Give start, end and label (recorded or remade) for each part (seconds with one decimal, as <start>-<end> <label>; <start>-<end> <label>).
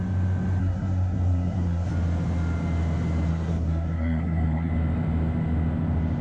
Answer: 0.0-0.6 recorded; 0.6-1.9 remade; 1.9-3.3 recorded; 3.3-4.7 remade; 4.7-6.2 recorded